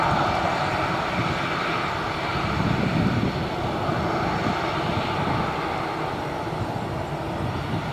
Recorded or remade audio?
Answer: recorded